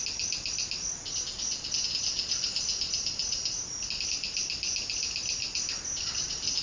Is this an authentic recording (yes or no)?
yes